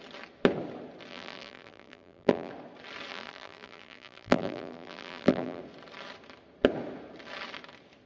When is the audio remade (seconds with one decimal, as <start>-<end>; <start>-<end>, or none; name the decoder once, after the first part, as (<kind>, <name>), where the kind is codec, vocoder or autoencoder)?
1.1-2.5 (vocoder, BigVGAN v2); 3.1-5.6